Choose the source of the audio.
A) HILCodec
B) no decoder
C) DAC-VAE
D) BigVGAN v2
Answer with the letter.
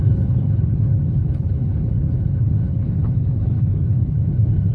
A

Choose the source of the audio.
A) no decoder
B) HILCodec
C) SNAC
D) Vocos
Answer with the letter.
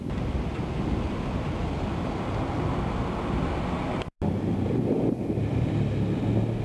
A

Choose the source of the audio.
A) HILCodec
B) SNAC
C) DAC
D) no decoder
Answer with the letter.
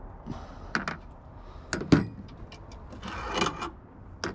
D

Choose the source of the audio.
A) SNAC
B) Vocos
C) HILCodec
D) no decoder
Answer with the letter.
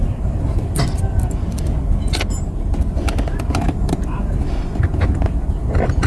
D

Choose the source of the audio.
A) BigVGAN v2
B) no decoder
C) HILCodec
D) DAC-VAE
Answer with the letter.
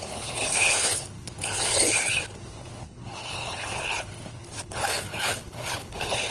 C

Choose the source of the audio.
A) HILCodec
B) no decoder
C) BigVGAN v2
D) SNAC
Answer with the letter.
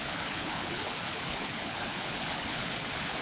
A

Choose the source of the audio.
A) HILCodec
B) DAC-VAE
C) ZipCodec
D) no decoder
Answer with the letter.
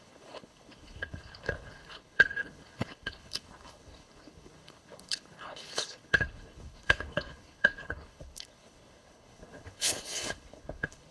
A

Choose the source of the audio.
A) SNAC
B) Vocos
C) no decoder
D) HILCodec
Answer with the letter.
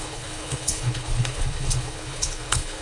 D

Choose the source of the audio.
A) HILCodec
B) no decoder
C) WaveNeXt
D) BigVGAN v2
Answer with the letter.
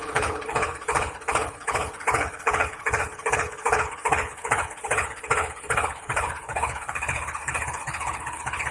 A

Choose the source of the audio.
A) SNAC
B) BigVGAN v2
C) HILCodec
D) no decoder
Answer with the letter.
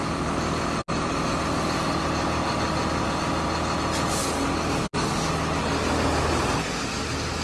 D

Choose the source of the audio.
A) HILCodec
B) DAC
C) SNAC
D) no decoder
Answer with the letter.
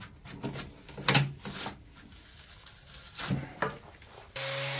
D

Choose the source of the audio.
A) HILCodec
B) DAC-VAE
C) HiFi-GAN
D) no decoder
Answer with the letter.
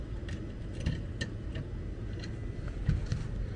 D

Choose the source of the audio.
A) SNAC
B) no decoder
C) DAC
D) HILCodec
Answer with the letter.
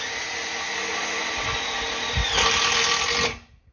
B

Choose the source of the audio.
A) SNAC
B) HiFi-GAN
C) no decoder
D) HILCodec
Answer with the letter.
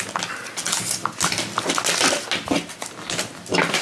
C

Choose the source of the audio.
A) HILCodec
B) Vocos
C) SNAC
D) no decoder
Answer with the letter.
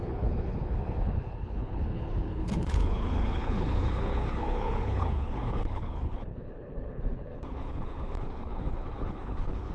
A